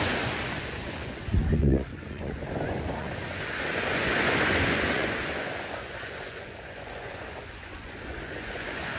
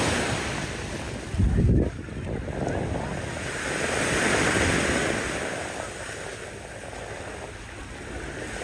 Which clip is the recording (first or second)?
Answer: second